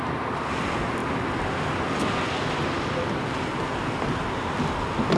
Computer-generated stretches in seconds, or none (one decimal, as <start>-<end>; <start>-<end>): none